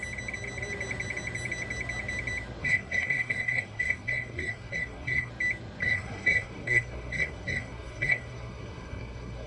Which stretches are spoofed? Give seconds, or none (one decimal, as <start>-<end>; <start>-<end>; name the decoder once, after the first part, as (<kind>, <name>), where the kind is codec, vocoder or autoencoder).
2.6-5.3 (codec, SNAC); 5.8-9.5